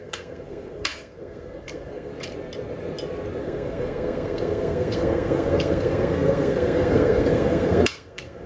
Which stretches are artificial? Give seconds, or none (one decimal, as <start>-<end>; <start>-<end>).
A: 0.0-2.1; 3.4-8.5